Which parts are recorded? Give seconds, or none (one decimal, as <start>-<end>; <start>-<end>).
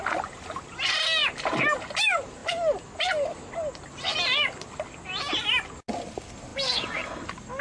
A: 0.0-7.6